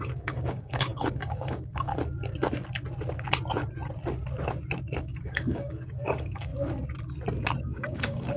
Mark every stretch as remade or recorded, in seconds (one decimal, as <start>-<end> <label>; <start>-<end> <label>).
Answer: 0.0-1.9 remade; 1.9-5.0 recorded; 5.0-6.5 remade; 6.5-7.6 recorded; 7.6-8.4 remade